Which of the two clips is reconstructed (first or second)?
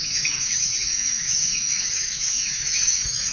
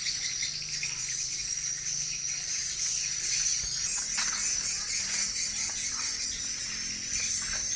first